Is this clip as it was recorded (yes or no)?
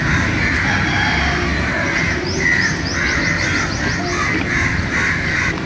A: yes